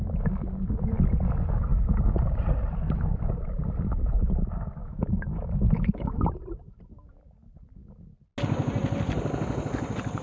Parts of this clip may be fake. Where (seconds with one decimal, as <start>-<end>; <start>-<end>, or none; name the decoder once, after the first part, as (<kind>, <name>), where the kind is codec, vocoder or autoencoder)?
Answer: 4.8-6.3 (autoencoder, DAC-VAE)